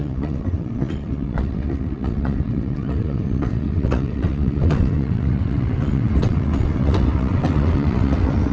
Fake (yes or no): yes